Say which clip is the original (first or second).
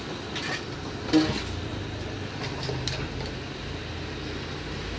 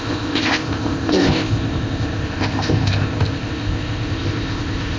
first